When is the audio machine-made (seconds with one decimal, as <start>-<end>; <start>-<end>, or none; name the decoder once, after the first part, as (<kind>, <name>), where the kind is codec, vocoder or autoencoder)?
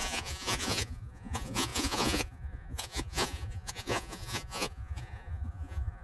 0.0-6.0 (vocoder, Vocos)